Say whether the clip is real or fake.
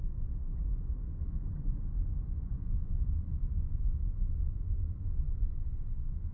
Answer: fake